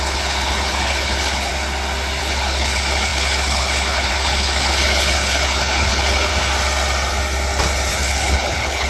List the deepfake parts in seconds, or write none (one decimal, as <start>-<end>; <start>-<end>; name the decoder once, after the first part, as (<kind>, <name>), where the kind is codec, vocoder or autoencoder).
0.0-1.5 (codec, HILCodec); 2.2-6.3; 7.9-8.9